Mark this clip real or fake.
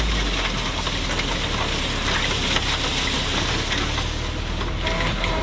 real